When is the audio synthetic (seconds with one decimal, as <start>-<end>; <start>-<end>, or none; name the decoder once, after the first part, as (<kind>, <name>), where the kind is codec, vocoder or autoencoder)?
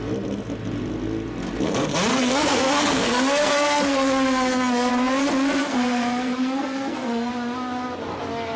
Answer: 2.1-4.9 (codec, SNAC); 5.6-7.3